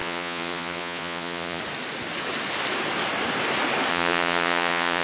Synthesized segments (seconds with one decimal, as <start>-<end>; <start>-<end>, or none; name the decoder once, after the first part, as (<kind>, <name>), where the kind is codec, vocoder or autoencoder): 0.0-1.6 (vocoder, Vocos); 3.9-5.0